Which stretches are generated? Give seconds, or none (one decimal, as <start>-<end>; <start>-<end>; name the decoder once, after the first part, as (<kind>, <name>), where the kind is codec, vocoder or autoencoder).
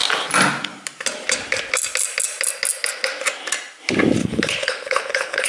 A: 4.2-5.5 (codec, HILCodec)